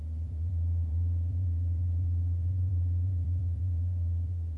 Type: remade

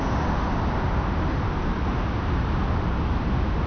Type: recorded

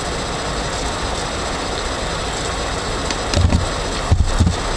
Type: recorded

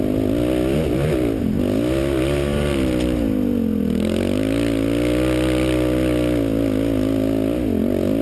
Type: recorded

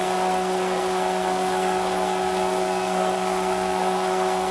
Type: remade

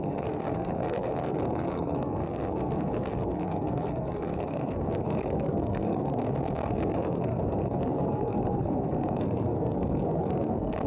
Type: remade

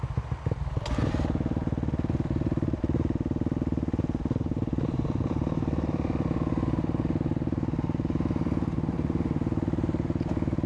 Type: recorded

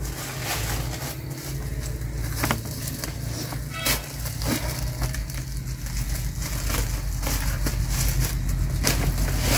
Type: recorded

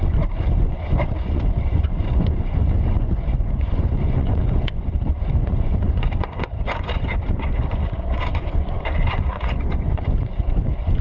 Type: remade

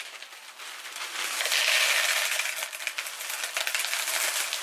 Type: recorded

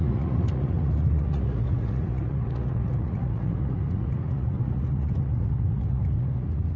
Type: remade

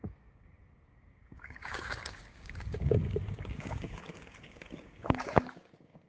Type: remade